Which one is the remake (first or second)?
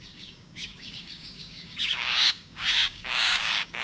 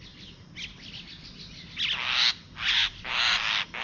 first